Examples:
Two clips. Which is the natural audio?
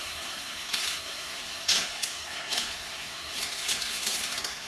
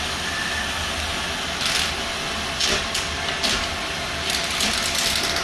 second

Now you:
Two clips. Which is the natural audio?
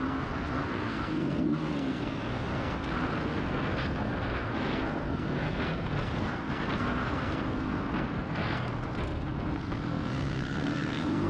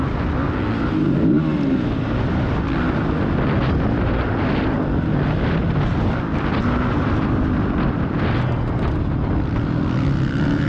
second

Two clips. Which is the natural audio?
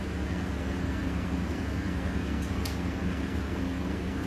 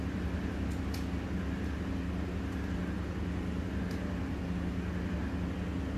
second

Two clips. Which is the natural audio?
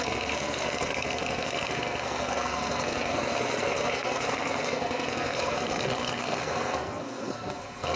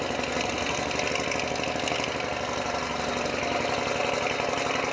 second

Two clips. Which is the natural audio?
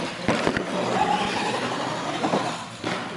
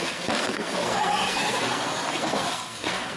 first